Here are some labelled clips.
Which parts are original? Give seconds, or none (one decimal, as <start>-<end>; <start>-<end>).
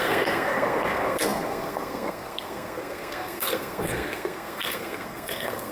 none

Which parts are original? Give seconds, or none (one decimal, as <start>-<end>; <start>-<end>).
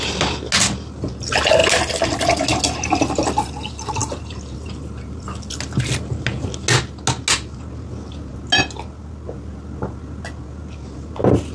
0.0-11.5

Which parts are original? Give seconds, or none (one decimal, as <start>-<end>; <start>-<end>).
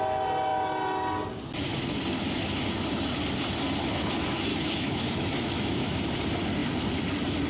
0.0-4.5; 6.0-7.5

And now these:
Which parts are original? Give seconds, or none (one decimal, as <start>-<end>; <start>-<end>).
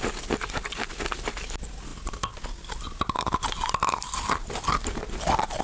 0.0-5.6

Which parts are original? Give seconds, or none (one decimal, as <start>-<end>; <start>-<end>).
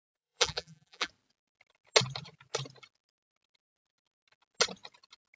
1.1-5.4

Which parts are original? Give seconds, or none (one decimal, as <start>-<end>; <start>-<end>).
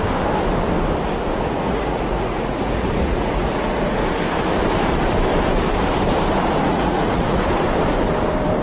0.0-1.3; 4.0-6.7; 7.4-8.6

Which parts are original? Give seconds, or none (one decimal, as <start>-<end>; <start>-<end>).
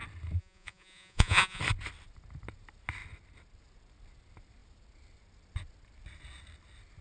0.0-0.4; 1.6-7.0